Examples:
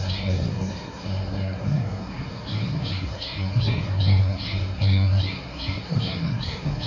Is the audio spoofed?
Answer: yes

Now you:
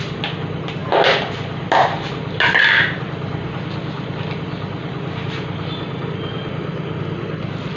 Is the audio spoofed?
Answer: no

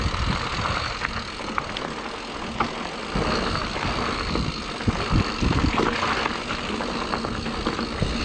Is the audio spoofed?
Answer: no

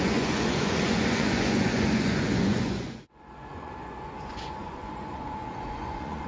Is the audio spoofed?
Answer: yes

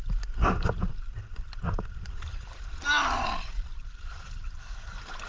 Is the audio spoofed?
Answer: no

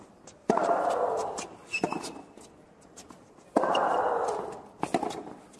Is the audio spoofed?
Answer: no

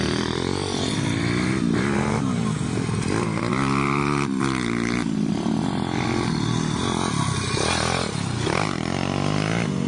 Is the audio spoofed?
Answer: no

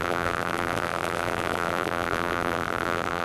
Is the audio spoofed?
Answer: yes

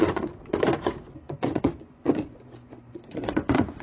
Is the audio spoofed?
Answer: yes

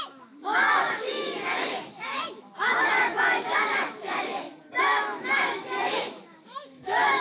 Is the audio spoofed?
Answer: yes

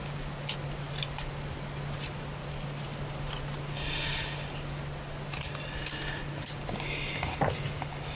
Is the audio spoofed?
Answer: no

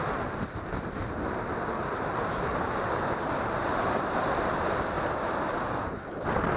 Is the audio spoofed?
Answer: no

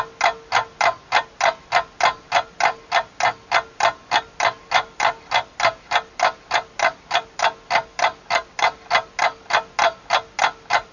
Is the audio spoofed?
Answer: no